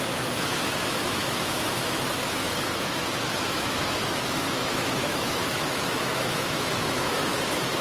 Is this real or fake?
fake